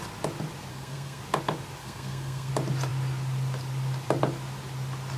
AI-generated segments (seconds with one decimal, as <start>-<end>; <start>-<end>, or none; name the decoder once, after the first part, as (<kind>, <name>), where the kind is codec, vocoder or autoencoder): 0.7-1.2 (codec, SNAC); 1.8-2.5